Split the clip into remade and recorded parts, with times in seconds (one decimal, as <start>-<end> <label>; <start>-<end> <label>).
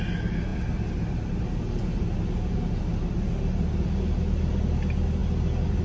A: 0.0-5.8 recorded